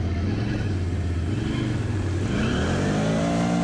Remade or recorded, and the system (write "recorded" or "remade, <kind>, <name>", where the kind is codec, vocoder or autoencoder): recorded